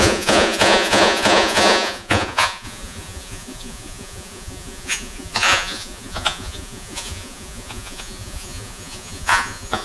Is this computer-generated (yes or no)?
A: yes